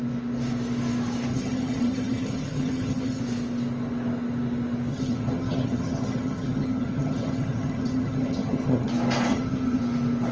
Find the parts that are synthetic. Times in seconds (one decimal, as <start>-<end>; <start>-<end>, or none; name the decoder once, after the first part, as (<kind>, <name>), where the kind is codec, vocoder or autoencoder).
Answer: 1.3-3.2 (vocoder, HiFi-GAN); 4.9-8.9; 9.3-9.8